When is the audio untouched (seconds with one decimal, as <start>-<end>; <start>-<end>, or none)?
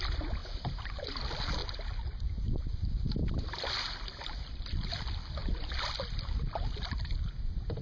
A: 0.0-7.8